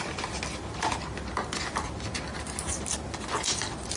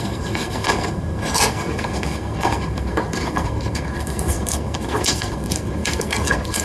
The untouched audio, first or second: first